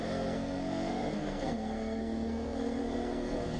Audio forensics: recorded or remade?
remade